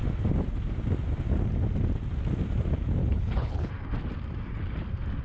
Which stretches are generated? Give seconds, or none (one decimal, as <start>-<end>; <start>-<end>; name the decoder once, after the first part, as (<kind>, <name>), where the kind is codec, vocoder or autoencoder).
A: 3.0-3.7 (codec, HILCodec)